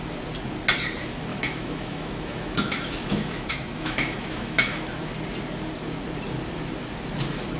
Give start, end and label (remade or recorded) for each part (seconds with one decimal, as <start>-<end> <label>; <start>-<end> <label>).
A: 0.0-1.3 recorded; 1.3-5.1 remade; 5.1-7.6 recorded